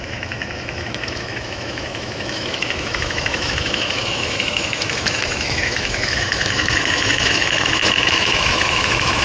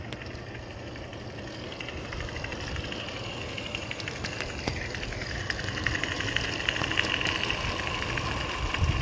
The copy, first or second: first